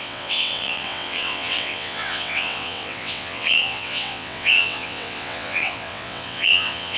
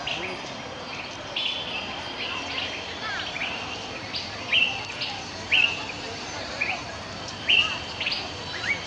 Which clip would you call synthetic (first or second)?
first